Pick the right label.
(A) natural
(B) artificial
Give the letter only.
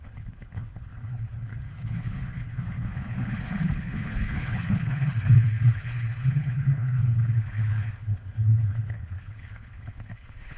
B